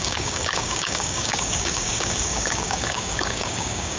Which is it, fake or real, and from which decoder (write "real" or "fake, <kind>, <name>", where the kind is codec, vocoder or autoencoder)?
fake, codec, DAC